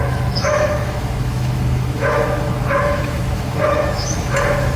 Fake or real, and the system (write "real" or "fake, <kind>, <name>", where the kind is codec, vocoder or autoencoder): fake, autoencoder, DAC-VAE